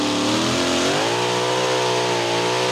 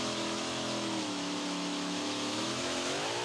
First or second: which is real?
first